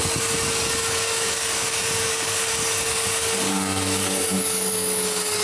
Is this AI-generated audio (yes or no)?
yes